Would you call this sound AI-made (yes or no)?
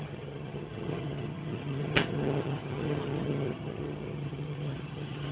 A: yes